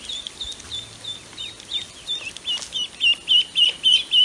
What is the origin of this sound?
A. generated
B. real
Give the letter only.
B